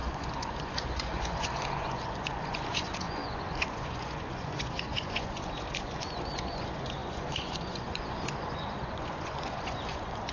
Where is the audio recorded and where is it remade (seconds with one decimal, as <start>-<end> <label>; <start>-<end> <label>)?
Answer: 0.0-10.3 remade